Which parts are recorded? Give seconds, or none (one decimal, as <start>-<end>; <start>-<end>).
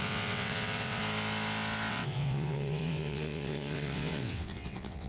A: 1.0-1.9